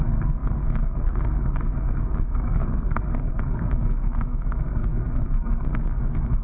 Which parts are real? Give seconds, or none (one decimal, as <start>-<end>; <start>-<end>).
none

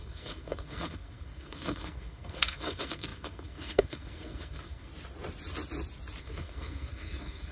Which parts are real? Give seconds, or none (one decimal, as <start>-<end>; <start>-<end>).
4.9-6.2